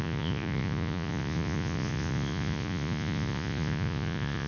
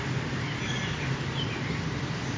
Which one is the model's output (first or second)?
first